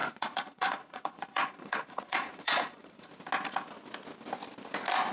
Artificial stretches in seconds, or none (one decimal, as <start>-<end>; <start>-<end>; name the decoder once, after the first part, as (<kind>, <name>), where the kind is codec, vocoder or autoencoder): 0.0-3.1 (vocoder, Vocos)